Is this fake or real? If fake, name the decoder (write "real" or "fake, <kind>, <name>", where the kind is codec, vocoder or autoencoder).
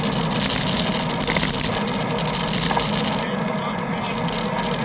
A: real